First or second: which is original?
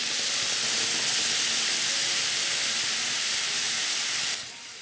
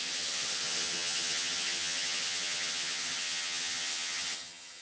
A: first